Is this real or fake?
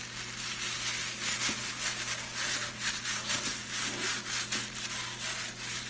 real